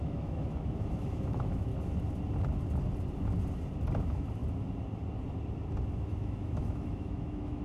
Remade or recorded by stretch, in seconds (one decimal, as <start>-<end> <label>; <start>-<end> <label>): 0.0-1.7 remade; 1.7-4.0 recorded; 4.0-4.4 remade; 4.4-5.9 recorded; 5.9-7.6 remade